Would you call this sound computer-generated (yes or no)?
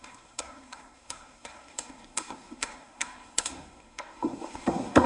yes